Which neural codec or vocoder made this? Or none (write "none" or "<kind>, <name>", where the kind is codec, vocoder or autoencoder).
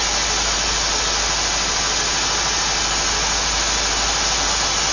none